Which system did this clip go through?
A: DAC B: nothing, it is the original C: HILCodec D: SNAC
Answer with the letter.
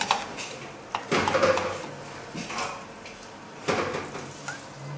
B